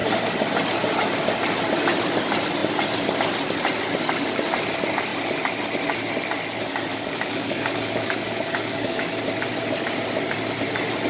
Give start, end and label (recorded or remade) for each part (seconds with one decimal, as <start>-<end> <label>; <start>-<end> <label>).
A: 0.0-6.9 recorded; 6.9-9.1 remade; 9.1-11.1 recorded